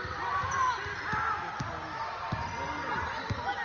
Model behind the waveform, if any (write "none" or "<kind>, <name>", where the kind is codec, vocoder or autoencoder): none